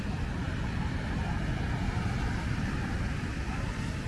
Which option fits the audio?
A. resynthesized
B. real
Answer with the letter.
B